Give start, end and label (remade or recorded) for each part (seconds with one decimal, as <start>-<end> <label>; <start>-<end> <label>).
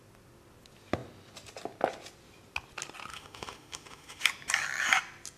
0.0-3.1 recorded; 3.1-4.2 remade; 4.2-5.4 recorded